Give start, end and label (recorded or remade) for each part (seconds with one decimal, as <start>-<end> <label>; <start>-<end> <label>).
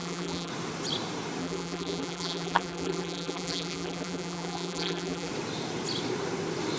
0.0-0.5 remade; 0.5-1.4 recorded; 1.4-5.3 remade; 5.3-6.8 recorded